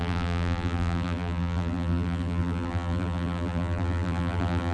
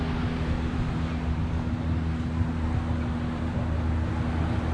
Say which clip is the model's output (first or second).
first